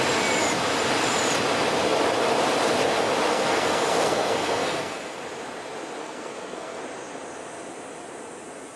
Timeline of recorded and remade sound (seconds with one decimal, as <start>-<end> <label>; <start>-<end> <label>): 0.0-3.3 recorded; 3.3-5.2 remade; 5.2-6.0 recorded; 6.0-6.8 remade; 6.8-8.8 recorded

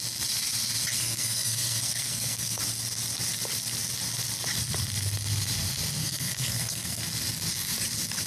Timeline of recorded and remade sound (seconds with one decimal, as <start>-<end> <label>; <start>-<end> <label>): 0.0-0.9 recorded; 0.9-2.6 remade; 2.6-6.0 recorded; 6.0-7.0 remade; 7.0-8.3 recorded

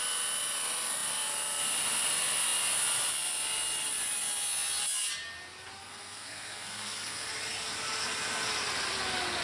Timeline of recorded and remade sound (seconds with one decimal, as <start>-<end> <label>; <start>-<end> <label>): 0.0-5.8 recorded; 5.8-7.3 remade; 7.3-9.4 recorded